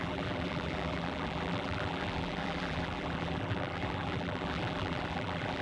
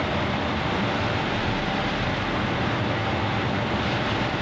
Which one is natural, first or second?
second